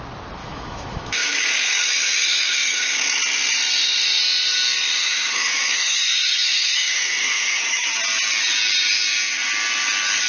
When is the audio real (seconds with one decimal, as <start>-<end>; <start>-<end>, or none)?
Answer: 0.0-0.4; 3.2-5.0; 7.9-10.3